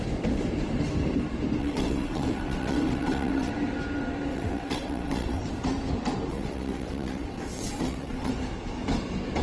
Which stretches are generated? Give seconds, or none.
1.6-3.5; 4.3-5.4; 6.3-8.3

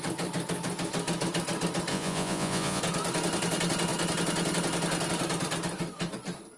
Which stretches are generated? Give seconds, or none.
1.9-2.8

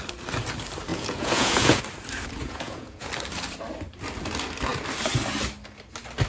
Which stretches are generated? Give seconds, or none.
0.9-1.8; 2.4-3.1

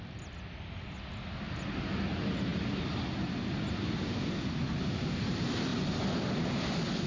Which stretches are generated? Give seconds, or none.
none

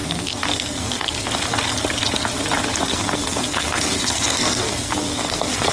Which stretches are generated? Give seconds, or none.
0.0-1.3; 2.9-5.7

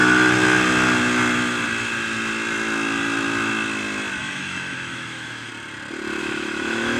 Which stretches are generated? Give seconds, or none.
4.2-5.5; 6.2-7.0